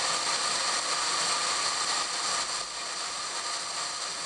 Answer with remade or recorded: recorded